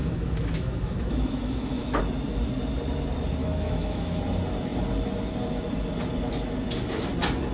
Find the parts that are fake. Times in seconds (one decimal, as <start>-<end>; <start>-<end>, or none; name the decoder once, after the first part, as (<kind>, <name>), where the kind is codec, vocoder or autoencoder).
0.0-2.0 (autoencoder, DAC-VAE); 3.4-4.2